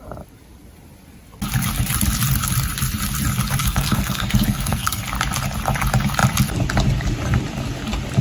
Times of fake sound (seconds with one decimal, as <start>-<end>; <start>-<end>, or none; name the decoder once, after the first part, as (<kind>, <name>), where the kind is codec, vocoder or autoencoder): 3.6-5.0 (codec, SNAC)